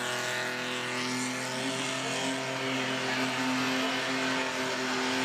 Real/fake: real